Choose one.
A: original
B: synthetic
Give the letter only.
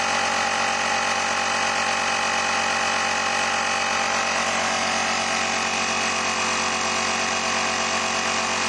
A